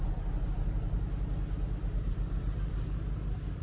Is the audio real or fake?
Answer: real